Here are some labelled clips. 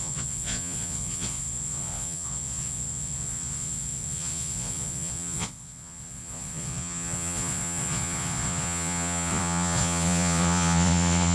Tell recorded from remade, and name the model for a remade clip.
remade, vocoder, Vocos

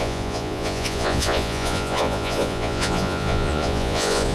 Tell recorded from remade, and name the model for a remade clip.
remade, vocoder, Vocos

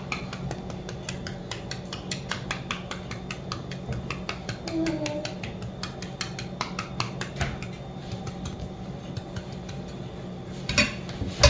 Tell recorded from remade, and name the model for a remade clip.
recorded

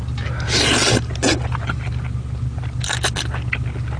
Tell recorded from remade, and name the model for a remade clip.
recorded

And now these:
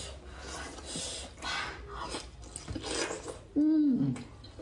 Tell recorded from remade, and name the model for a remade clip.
recorded